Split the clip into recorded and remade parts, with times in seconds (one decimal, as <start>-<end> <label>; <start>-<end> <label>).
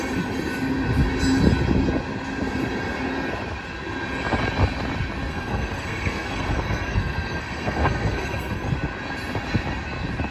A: 0.0-5.3 recorded; 5.3-8.7 remade; 8.7-10.3 recorded